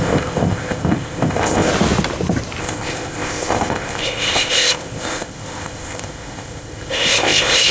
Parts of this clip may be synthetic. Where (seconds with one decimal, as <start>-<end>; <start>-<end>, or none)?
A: 0.0-1.7; 2.6-7.7